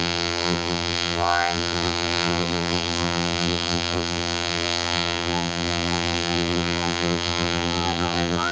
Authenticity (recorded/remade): remade